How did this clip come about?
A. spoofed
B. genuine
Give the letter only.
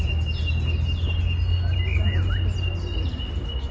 B